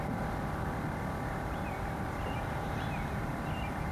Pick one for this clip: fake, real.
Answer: real